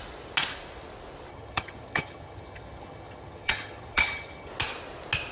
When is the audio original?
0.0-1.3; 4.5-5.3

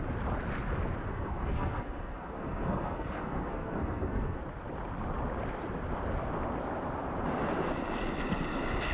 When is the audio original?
0.0-1.1; 4.4-8.9

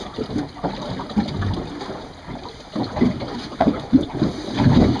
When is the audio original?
0.0-3.3; 4.1-5.0

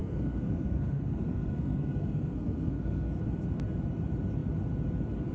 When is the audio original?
3.2-5.3